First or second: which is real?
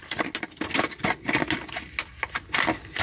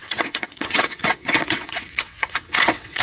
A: first